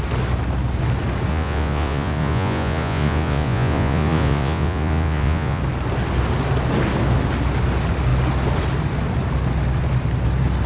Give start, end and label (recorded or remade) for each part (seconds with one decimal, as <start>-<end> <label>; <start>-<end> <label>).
0.0-1.3 recorded; 1.3-5.6 remade; 5.6-10.7 recorded